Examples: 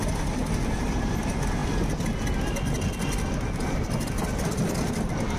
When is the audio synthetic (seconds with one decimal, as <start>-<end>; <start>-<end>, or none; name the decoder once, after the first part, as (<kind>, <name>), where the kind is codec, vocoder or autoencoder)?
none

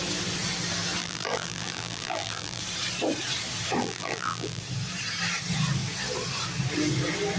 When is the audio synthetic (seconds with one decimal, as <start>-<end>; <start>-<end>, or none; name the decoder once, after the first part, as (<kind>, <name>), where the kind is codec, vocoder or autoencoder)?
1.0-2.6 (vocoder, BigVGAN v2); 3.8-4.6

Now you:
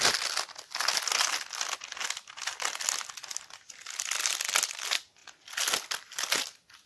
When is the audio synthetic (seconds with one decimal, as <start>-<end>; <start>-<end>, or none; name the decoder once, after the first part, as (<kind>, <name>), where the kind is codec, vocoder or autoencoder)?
none

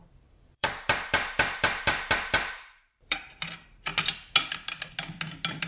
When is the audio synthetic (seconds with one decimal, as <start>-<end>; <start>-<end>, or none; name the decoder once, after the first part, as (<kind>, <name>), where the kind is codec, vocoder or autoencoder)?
0.0-3.4 (vocoder, BigVGAN v2)